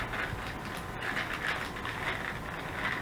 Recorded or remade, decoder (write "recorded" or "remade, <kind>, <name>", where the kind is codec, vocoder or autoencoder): recorded